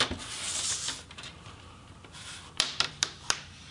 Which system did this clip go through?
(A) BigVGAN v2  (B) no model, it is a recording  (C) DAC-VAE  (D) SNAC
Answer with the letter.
A